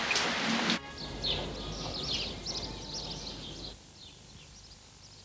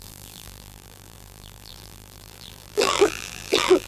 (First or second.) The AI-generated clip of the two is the second